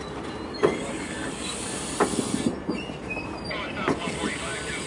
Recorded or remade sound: remade